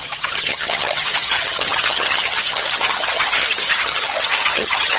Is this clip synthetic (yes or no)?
yes